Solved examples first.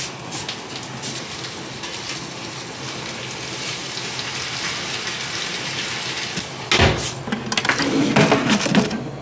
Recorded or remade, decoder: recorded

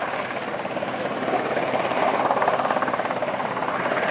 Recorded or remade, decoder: recorded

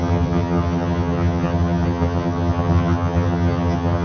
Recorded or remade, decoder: remade, vocoder, HiFi-GAN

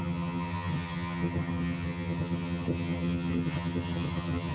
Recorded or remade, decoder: remade, vocoder, HiFi-GAN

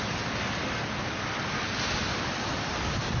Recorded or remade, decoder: recorded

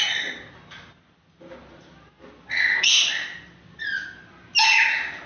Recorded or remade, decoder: recorded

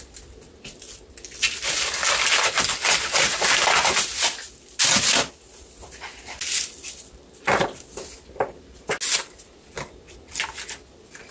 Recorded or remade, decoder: recorded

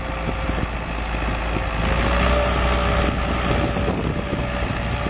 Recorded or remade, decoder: recorded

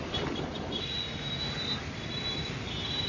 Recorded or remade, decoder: recorded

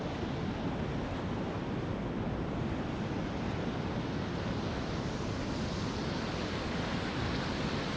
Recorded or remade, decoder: recorded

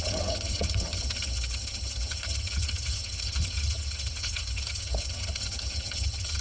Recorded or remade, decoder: remade, vocoder, HiFi-GAN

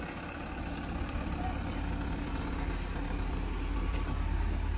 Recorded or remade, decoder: recorded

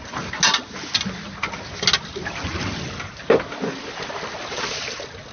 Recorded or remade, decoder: recorded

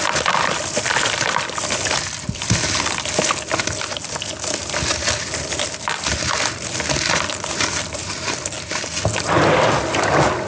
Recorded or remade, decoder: recorded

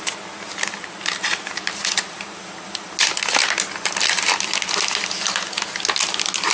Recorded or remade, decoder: recorded